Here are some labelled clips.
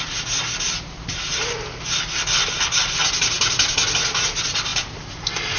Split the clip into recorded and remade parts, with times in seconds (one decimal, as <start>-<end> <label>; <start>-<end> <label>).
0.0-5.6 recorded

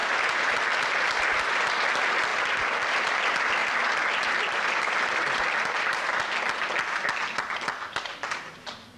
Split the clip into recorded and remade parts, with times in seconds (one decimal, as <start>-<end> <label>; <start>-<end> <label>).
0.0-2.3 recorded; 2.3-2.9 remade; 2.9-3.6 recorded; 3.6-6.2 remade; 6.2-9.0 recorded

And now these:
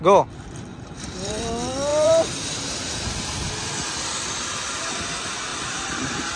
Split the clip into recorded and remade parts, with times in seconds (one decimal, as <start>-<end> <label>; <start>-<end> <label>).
0.0-0.7 recorded; 0.7-1.5 remade; 1.5-1.9 recorded; 1.9-3.5 remade; 3.5-5.5 recorded; 5.5-6.4 remade

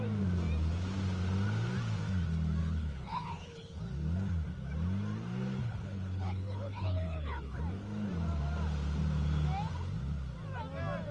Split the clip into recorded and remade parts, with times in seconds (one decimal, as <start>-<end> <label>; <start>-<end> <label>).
0.0-2.6 recorded; 2.6-3.8 remade; 3.8-5.6 recorded; 5.6-7.6 remade; 7.6-11.1 recorded

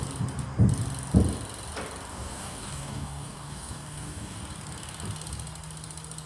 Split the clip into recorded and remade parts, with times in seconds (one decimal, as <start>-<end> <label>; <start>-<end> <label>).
0.0-2.1 recorded; 2.1-4.4 remade; 4.4-6.3 recorded

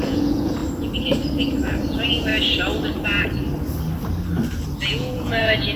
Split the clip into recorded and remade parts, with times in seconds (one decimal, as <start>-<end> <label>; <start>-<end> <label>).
0.0-0.6 remade; 0.6-1.9 recorded; 1.9-2.3 remade; 2.3-4.8 recorded; 4.8-5.8 remade